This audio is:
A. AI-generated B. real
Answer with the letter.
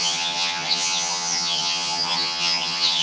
A